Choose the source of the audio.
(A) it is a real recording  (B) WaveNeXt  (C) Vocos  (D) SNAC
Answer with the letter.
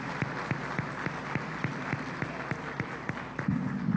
A